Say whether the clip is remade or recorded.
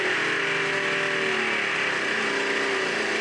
recorded